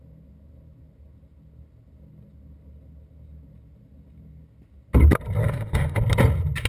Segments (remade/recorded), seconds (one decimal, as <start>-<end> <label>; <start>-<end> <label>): 0.0-5.4 recorded; 5.4-6.0 remade; 6.0-6.7 recorded